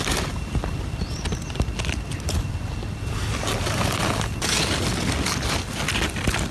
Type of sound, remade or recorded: recorded